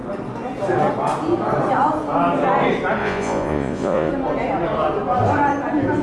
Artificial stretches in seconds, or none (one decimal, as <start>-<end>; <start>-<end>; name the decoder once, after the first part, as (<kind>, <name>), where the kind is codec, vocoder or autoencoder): 3.0-4.1 (vocoder, Vocos)